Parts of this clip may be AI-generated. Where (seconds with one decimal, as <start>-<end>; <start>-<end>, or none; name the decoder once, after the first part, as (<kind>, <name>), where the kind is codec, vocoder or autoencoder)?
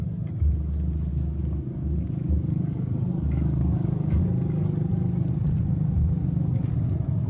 1.1-4.2 (codec, DAC)